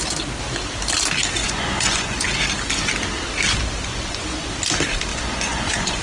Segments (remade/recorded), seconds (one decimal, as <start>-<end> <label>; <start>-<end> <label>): 0.0-1.4 recorded; 1.4-2.3 remade; 2.3-3.9 recorded; 3.9-4.5 remade; 4.5-5.1 recorded; 5.1-6.0 remade